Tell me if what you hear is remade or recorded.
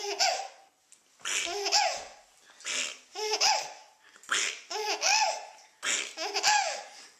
recorded